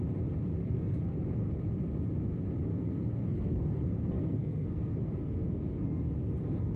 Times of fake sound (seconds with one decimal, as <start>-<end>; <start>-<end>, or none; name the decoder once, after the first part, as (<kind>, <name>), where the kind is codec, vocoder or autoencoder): 0.6-1.5 (codec, SNAC); 2.7-6.8